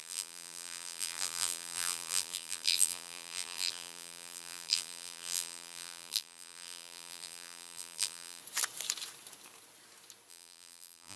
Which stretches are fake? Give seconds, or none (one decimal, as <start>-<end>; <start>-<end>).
0.0-8.4; 10.3-11.2